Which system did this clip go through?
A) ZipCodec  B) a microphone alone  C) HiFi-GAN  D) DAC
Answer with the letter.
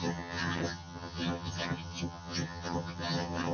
C